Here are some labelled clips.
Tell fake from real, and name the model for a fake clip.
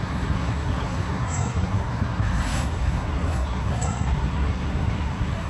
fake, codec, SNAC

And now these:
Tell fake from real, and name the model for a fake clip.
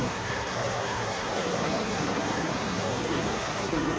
fake, codec, SNAC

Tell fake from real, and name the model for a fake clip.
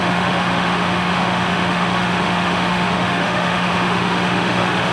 fake, autoencoder, DAC-VAE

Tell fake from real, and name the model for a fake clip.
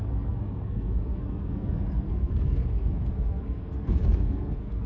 fake, codec, SNAC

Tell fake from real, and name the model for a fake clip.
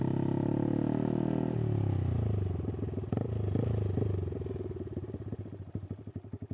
real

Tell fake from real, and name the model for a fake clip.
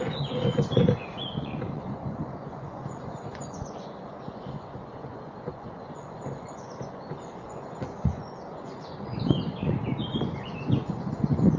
fake, vocoder, Vocos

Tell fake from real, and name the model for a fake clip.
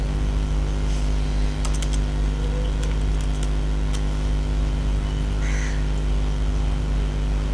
real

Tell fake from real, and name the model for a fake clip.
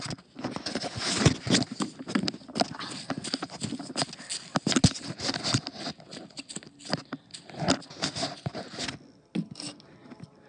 real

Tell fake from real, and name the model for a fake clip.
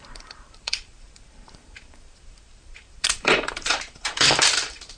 fake, vocoder, BigVGAN v2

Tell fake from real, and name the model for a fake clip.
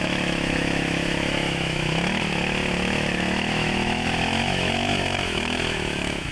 fake, autoencoder, DAC-VAE